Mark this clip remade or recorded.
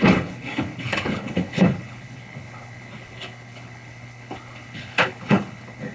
remade